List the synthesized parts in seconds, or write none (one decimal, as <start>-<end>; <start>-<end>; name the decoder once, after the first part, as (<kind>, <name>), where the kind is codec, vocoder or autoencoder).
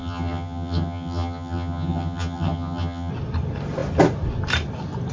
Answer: 0.0-3.1 (vocoder, HiFi-GAN)